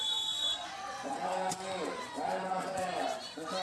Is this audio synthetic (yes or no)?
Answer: yes